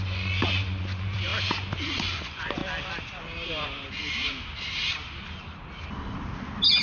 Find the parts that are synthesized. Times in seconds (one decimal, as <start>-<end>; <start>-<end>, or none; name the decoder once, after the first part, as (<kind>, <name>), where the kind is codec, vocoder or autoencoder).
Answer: 0.0-1.3 (vocoder, Vocos); 1.9-2.6